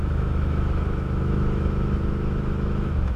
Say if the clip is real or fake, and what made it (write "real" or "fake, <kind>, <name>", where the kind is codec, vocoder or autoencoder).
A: fake, autoencoder, DAC-VAE